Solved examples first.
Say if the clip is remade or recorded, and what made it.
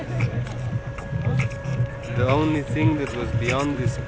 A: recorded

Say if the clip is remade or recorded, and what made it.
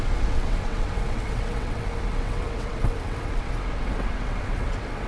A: remade, vocoder, WaveNeXt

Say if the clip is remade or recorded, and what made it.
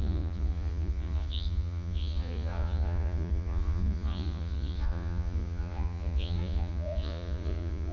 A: remade, vocoder, Vocos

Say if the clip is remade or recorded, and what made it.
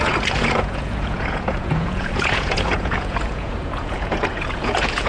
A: remade, vocoder, Vocos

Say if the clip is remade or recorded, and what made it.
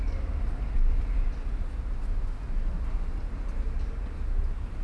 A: recorded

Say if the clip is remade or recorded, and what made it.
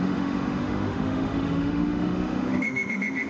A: remade, autoencoder, DAC-VAE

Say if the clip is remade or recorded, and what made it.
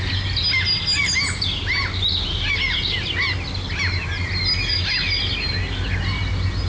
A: recorded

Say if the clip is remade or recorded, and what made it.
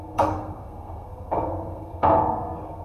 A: remade, codec, SNAC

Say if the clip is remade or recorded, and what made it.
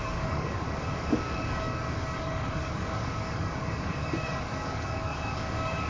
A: remade, codec, DAC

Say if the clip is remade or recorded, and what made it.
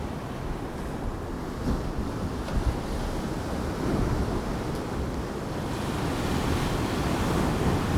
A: recorded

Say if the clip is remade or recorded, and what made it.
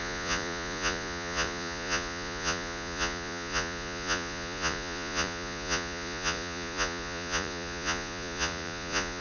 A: remade, vocoder, Vocos